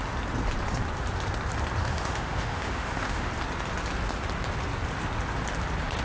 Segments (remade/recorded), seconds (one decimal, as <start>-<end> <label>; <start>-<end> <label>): 0.0-1.8 recorded; 1.8-3.3 remade; 3.3-6.0 recorded